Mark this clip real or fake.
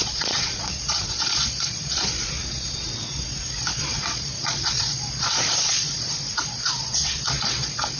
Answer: fake